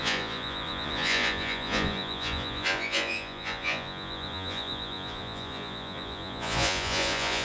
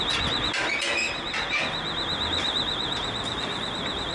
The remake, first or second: first